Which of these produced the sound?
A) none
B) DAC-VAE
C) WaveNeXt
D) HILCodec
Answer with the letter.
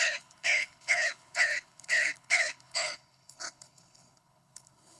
D